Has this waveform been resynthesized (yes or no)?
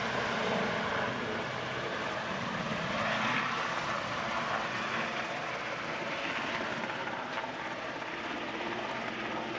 no